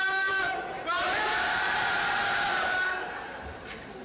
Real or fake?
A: fake